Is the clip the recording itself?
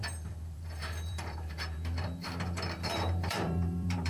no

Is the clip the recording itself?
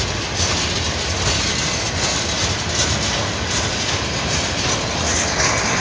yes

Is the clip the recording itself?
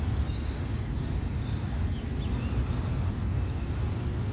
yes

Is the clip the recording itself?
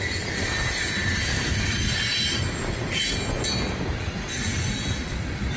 yes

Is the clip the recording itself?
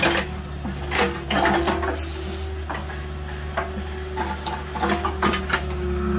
yes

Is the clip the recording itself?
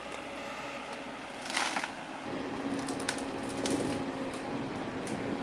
yes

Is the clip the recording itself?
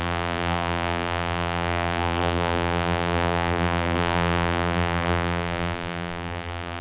no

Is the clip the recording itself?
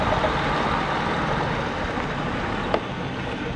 yes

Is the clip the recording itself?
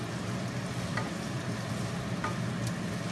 yes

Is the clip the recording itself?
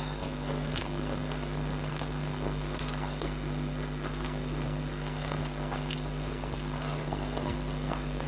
no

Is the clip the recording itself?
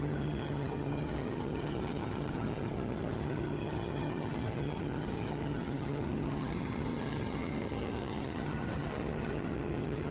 no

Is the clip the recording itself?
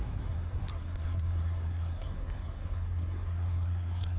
no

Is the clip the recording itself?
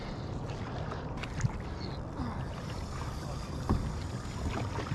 yes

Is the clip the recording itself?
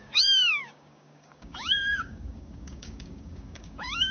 no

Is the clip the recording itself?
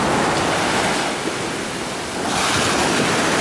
yes